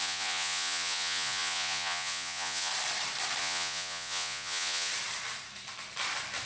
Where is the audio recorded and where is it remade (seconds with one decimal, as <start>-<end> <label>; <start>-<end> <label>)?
0.0-2.7 remade; 2.7-3.4 recorded; 3.4-4.9 remade; 4.9-6.5 recorded